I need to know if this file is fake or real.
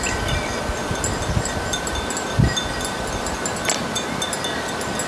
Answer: real